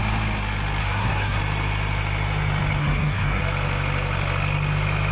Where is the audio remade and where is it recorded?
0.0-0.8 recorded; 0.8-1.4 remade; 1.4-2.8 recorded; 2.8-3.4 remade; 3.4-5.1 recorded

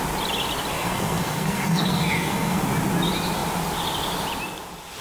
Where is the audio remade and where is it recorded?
0.0-0.7 recorded; 0.7-2.6 remade; 2.6-5.0 recorded